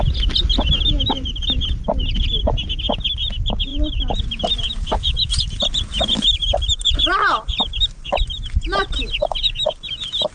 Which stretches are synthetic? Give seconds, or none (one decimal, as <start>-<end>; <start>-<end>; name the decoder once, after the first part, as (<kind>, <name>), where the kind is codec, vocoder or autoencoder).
none

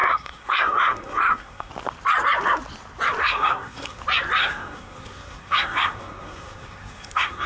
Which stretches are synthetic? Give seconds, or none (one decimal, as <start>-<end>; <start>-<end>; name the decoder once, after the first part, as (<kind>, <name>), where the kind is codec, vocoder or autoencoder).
0.0-1.7 (codec, SNAC); 3.2-4.0; 4.4-7.5

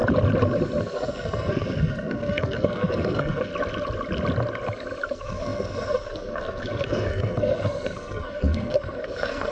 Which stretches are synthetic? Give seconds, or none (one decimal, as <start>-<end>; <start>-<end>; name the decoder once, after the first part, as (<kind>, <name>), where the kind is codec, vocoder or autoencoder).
0.8-3.5 (codec, SNAC); 5.1-9.5

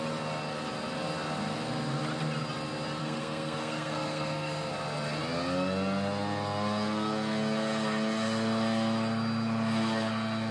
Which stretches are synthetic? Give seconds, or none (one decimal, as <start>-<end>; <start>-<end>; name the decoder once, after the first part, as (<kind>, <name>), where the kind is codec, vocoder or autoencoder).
3.0-4.7 (codec, SNAC)